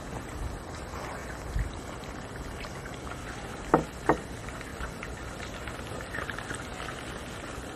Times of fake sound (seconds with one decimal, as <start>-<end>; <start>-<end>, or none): none